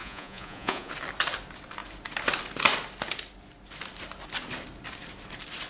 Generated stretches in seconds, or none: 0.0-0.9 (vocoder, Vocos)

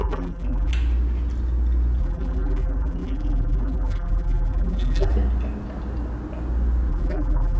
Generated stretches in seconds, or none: 0.0-0.7 (vocoder, BigVGAN v2); 2.0-5.1; 6.9-7.6